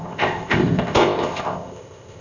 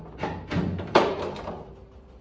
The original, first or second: second